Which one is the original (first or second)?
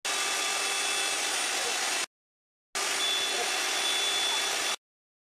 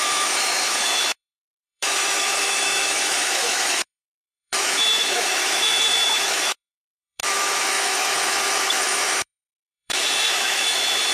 first